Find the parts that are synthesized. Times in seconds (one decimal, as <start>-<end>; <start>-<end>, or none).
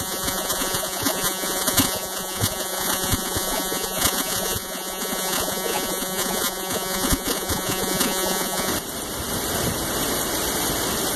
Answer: 0.0-8.7